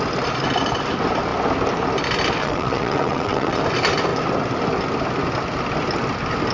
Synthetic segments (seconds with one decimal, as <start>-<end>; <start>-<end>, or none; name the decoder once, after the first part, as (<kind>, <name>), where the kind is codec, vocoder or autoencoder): 2.4-3.6 (vocoder, WaveNeXt)